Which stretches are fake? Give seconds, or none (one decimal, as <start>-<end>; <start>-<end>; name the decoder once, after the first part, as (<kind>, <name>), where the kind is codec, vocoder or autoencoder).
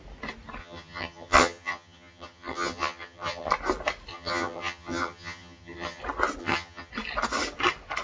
0.6-3.5 (vocoder, HiFi-GAN); 4.1-6.0; 6.4-6.9